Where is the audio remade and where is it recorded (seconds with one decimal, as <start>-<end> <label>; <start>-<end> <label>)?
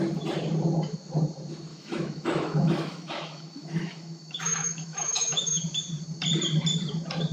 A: 0.0-1.7 recorded; 1.7-5.6 remade; 5.6-7.3 recorded